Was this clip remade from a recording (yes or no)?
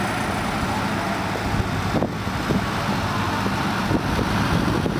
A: no